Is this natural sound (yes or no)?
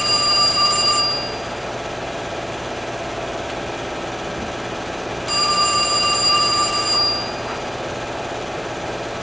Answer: yes